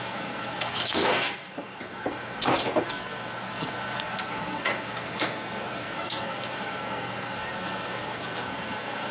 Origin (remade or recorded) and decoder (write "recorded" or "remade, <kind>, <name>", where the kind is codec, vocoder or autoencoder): remade, codec, SNAC